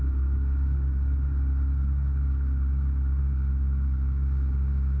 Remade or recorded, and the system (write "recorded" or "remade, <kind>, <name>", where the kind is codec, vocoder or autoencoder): recorded